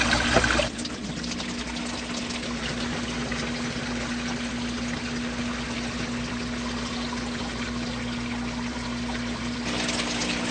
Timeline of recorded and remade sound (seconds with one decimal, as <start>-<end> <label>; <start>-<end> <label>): 0.0-10.5 recorded